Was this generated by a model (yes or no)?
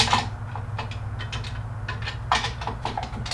no